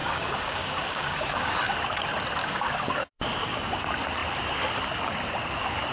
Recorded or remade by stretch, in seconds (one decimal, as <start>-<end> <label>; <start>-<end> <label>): 0.0-1.5 remade; 1.5-2.4 recorded; 2.4-3.8 remade; 3.8-5.9 recorded